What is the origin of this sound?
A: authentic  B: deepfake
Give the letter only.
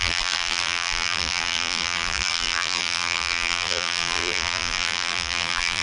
B